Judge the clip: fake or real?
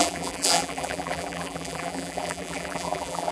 fake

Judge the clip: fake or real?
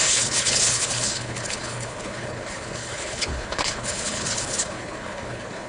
fake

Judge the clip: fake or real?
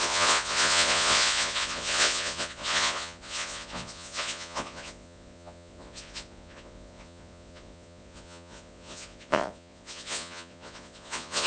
fake